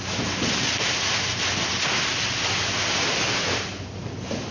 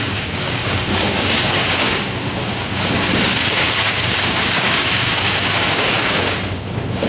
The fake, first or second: second